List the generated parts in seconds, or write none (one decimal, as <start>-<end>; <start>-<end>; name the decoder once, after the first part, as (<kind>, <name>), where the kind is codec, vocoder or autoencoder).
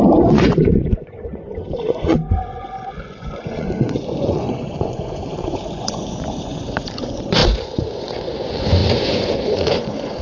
0.0-10.2 (vocoder, Vocos)